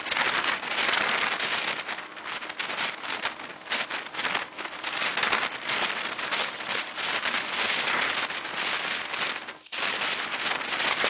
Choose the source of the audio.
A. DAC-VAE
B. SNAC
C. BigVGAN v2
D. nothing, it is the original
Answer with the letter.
D